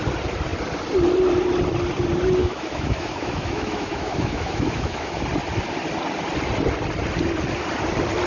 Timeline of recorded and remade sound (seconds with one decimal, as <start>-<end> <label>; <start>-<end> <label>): 0.0-2.4 recorded; 2.4-5.2 remade; 5.2-8.3 recorded